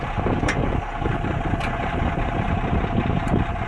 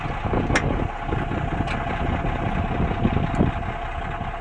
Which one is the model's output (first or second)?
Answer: first